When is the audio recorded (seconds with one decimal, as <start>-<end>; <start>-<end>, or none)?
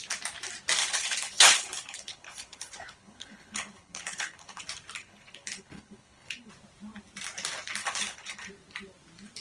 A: 0.0-0.8; 4.6-5.0; 6.5-7.8; 8.5-9.4